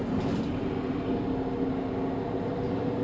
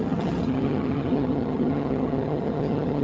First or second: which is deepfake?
second